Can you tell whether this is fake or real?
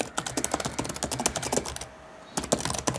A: real